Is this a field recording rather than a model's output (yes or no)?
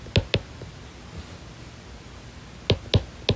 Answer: yes